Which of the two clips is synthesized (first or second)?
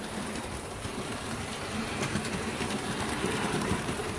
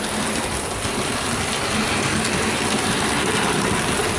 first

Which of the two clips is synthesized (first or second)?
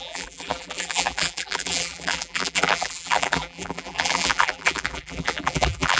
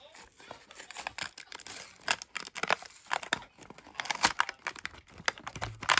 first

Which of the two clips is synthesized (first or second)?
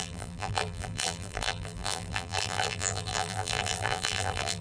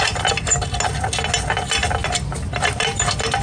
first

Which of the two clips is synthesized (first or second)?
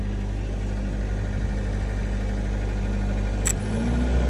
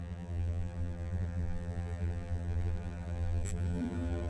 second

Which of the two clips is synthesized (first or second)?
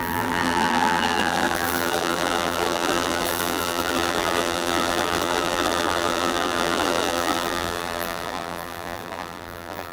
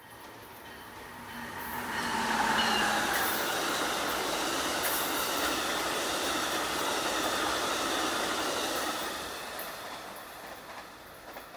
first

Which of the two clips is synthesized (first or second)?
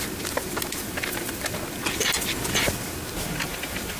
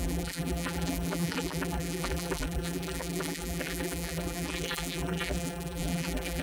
second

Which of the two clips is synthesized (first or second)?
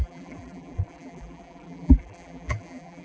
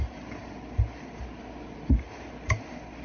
first